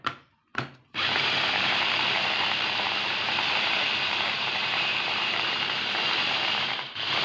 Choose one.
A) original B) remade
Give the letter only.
B